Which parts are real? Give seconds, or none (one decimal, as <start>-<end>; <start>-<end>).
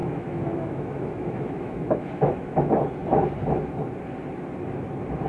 2.6-5.3